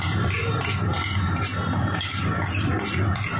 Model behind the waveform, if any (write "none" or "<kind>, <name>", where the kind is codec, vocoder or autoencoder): none